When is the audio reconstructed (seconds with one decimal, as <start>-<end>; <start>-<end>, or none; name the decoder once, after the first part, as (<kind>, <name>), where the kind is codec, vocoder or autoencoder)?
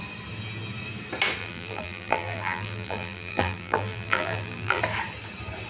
1.4-4.8 (vocoder, BigVGAN v2)